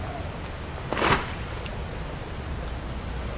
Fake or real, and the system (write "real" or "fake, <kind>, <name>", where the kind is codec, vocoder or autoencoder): real